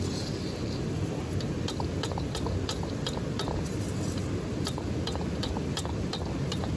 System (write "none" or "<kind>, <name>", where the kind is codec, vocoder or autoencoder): vocoder, BigVGAN v2